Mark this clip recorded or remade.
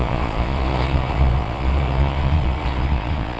remade